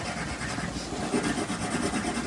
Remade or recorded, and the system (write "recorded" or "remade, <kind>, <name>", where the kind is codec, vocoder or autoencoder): recorded